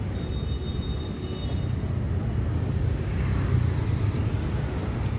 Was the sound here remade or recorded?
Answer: recorded